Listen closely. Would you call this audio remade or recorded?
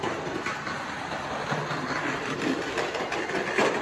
recorded